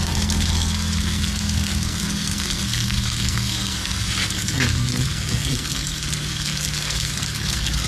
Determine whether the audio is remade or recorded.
remade